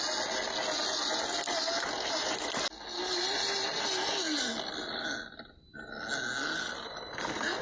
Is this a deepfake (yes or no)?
no